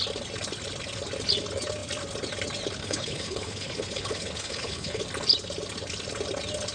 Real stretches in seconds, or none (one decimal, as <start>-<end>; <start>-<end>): 0.0-2.8; 5.0-6.7